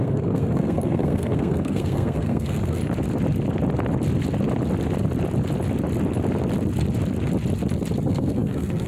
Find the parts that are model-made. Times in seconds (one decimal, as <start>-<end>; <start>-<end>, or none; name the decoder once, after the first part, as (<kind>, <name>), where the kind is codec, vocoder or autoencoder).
0.0-2.8 (codec, SNAC); 8.1-8.9